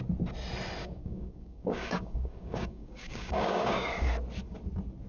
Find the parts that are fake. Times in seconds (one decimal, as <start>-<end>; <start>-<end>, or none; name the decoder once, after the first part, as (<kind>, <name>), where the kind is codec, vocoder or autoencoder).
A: 0.8-3.9 (codec, DAC)